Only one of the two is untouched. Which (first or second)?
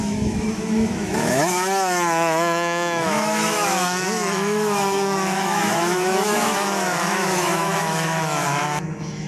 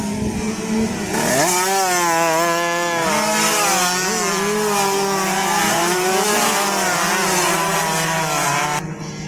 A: second